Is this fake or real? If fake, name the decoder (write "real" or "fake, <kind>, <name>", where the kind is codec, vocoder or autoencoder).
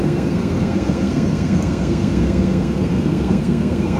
fake, codec, SNAC